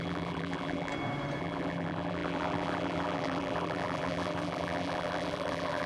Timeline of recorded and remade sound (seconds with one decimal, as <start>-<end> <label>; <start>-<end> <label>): 0.0-0.9 remade; 0.9-1.4 recorded; 1.4-5.9 remade